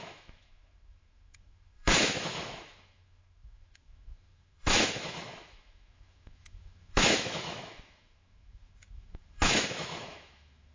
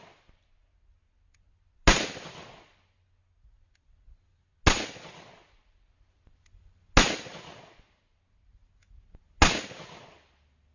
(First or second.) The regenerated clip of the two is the first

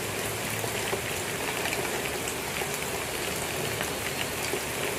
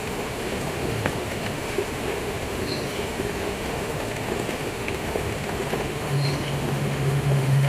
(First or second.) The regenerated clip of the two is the second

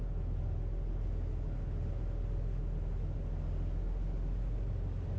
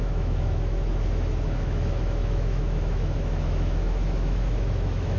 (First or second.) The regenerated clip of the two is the second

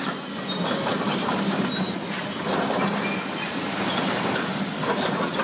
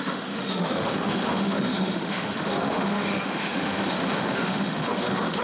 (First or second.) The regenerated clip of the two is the second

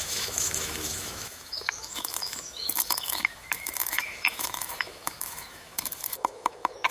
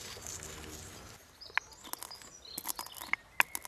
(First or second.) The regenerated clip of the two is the first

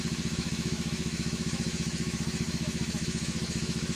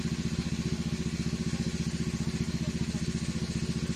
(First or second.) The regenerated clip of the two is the first